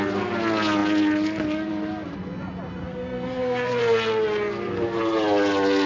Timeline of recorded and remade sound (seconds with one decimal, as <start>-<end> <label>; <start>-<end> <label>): 0.0-2.8 recorded; 2.8-3.8 remade; 3.8-5.9 recorded